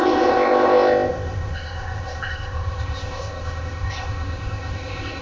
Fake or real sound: fake